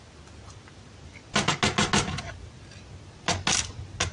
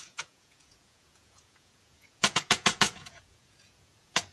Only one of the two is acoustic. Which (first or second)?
first